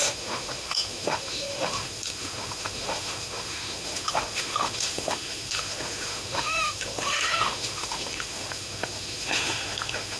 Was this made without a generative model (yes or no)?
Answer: no